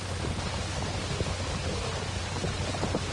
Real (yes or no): yes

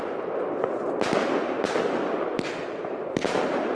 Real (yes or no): yes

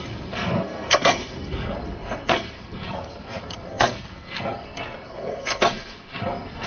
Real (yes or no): no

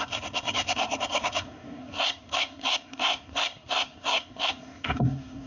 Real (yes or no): no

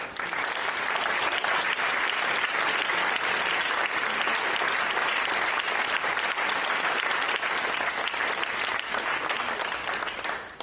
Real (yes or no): yes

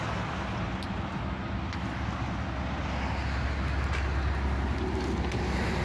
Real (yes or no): yes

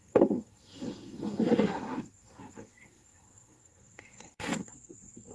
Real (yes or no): no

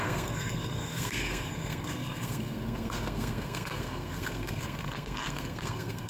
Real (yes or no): no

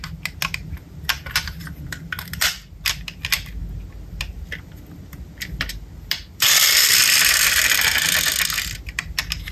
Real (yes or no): yes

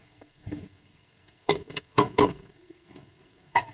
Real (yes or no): no